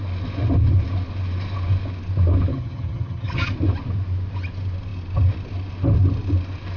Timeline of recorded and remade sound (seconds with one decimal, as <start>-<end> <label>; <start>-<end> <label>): 0.0-2.5 recorded; 2.5-3.5 remade; 3.5-6.8 recorded